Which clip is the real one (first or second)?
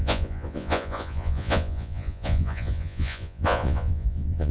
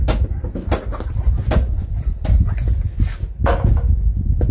second